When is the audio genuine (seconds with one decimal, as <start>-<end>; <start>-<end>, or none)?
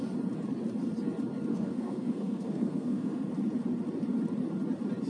0.0-1.5; 3.3-5.1